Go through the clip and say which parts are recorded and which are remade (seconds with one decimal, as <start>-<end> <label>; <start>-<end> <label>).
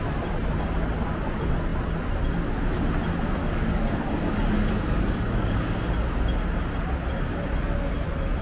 0.0-3.4 recorded; 3.4-5.6 remade; 5.6-8.4 recorded